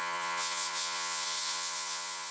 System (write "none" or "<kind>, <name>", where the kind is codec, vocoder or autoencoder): vocoder, Vocos